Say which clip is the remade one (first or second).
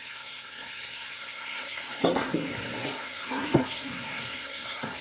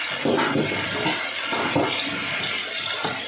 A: first